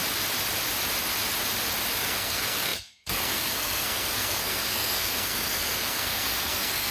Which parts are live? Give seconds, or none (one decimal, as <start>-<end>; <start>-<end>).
0.0-2.0